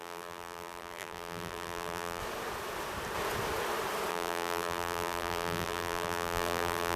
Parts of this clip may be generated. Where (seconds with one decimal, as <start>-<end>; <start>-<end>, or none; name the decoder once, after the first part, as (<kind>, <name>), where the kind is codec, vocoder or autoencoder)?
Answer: 0.0-2.2 (vocoder, BigVGAN v2); 4.1-7.0